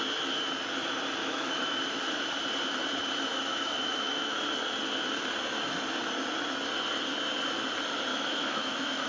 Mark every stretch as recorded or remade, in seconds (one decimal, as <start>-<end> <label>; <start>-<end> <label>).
0.0-1.2 recorded; 1.2-1.8 remade; 1.8-3.3 recorded; 3.3-4.4 remade; 4.4-8.1 recorded; 8.1-9.1 remade